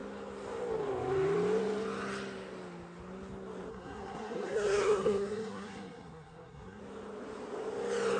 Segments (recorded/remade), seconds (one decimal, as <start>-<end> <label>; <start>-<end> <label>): 0.0-3.7 recorded; 3.7-6.8 remade; 6.8-8.2 recorded